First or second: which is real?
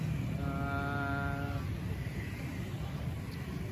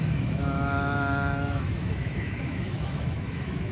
first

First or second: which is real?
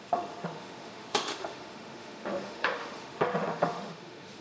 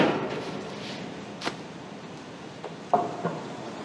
second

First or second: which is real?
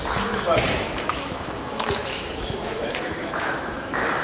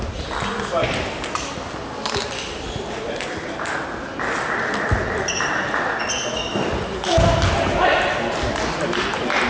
second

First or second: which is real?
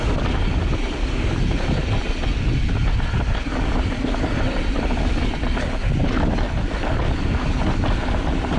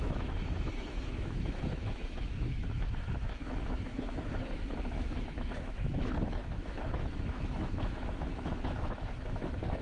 first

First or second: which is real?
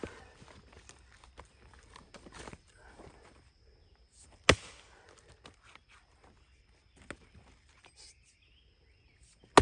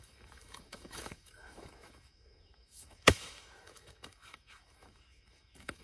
first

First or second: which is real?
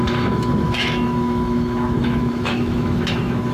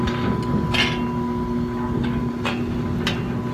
second